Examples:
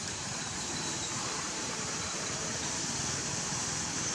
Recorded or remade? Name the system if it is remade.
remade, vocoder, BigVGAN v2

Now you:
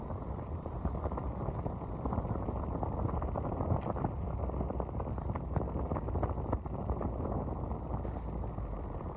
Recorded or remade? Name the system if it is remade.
recorded